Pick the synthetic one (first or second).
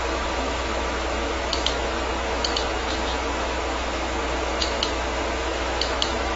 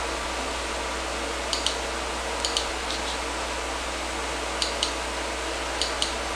first